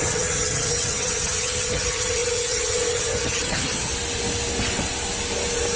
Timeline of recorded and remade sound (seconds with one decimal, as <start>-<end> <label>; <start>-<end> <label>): 0.0-3.9 remade; 3.9-5.8 recorded